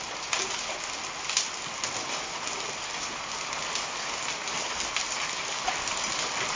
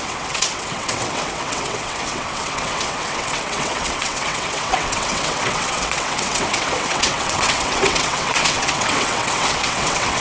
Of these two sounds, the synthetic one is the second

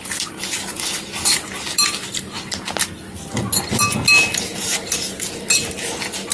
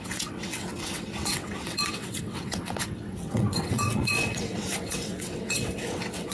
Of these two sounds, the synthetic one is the second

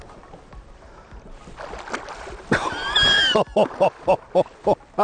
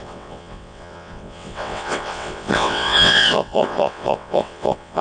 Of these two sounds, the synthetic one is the second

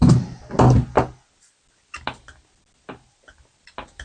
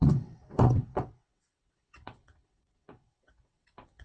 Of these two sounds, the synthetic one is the second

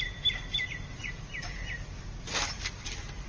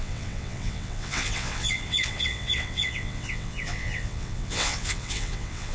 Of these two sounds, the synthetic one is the second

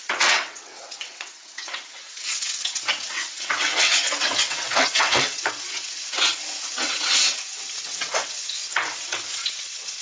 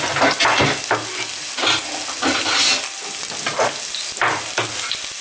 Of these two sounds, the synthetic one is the first